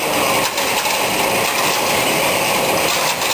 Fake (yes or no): no